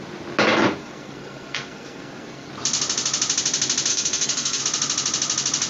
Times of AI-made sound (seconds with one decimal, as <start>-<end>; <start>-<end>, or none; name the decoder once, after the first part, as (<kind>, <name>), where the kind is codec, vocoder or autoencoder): 0.8-2.5 (codec, SNAC); 3.9-4.6